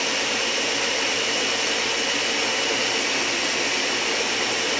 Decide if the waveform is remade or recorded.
recorded